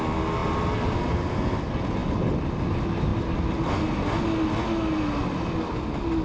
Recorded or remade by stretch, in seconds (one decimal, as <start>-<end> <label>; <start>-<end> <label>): 0.0-6.2 recorded